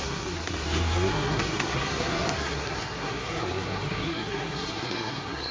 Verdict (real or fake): fake